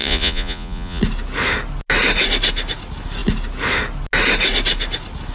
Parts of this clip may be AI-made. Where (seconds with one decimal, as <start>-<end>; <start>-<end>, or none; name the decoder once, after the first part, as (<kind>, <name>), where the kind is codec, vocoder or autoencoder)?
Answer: 0.0-1.0 (vocoder, Vocos)